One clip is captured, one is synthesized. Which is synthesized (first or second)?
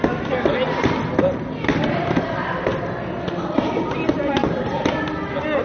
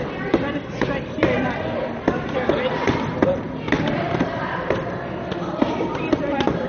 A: second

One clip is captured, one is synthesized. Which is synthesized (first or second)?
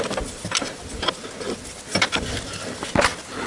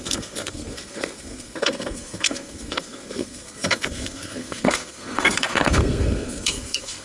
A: second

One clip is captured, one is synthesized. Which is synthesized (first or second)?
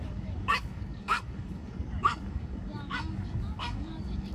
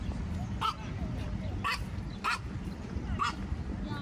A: first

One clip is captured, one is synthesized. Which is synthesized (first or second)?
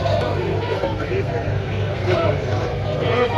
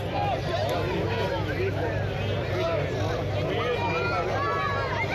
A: first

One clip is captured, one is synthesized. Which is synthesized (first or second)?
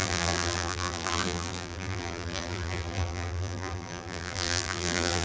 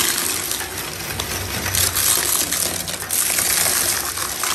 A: first